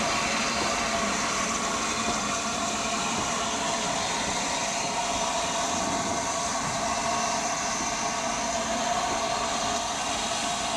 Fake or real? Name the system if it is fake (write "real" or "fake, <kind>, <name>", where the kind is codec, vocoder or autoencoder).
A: real